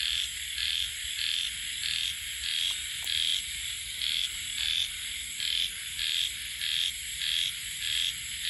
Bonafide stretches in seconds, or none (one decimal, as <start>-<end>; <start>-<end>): 0.0-8.5